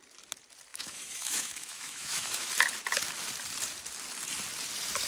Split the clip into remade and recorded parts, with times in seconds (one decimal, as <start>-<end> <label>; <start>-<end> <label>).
0.0-0.7 recorded; 0.7-2.5 remade; 2.5-5.1 recorded